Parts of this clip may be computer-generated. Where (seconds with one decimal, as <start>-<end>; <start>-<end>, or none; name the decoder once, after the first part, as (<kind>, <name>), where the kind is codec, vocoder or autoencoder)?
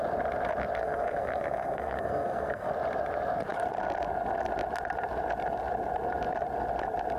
0.8-2.7 (codec, SNAC)